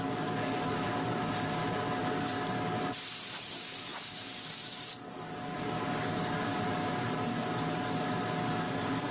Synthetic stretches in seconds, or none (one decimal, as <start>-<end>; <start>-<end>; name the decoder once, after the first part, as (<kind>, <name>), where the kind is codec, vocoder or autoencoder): 0.0-1.6 (codec, DAC); 3.5-6.5; 8.7-9.1